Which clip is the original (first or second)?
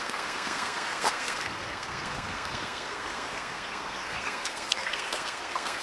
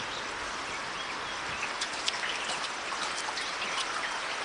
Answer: second